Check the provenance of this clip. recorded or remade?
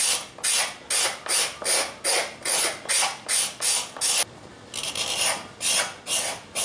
recorded